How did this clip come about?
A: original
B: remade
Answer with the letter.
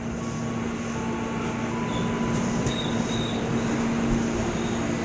A